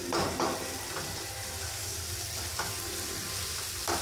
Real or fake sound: real